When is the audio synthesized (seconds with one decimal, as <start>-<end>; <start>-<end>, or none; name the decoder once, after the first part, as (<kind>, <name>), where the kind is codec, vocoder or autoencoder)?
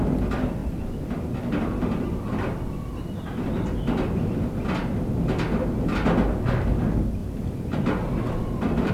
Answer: 0.6-2.2 (vocoder, BigVGAN v2); 7.2-8.9